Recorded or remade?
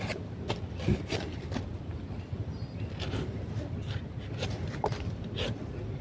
recorded